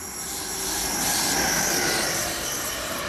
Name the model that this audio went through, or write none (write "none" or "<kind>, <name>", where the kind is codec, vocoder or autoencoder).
none